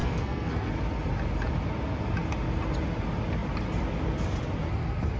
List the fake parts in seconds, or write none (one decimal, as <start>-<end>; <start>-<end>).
0.0-0.7